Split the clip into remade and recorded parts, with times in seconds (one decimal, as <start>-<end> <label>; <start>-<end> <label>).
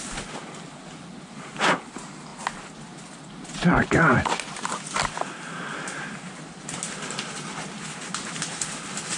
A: 0.0-9.2 recorded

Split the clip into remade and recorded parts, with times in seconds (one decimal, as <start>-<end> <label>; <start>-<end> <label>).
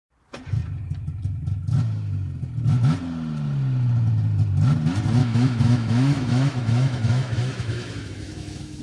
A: 0.0-5.2 recorded; 5.2-8.8 remade